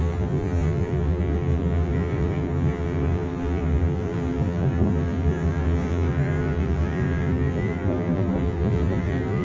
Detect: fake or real fake